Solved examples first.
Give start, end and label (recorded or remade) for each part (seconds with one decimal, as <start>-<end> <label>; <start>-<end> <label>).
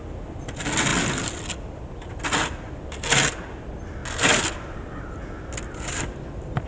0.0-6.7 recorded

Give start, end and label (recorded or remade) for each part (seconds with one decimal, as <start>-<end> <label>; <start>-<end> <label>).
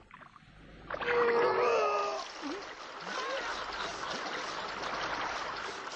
0.0-6.0 recorded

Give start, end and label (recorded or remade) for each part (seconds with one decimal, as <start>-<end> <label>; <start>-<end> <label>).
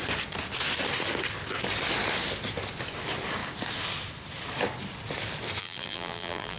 0.0-5.6 recorded; 5.6-6.6 remade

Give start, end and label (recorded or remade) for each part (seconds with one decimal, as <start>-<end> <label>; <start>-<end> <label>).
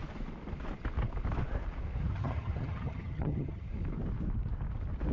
0.0-2.1 recorded; 2.1-3.7 remade; 3.7-5.1 recorded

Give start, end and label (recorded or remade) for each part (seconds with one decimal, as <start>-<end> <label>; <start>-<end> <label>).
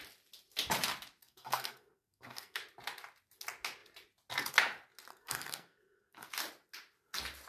0.0-1.2 recorded; 1.2-2.6 remade; 2.6-5.1 recorded; 5.1-6.3 remade; 6.3-7.5 recorded